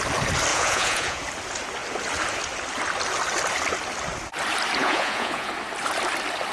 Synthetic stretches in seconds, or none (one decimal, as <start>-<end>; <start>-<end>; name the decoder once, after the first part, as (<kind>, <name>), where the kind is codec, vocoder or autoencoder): 0.5-1.2 (vocoder, Vocos); 4.8-5.5